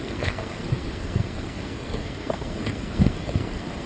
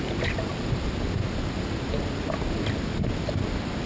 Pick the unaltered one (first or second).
second